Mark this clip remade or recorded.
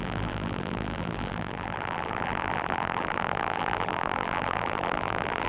remade